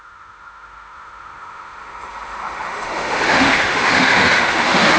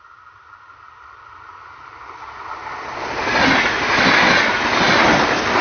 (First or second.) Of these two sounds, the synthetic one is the first